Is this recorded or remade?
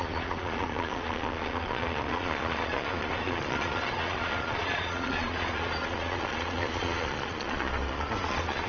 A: remade